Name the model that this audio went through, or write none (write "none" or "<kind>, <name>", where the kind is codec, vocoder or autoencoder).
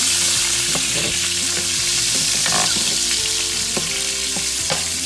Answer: none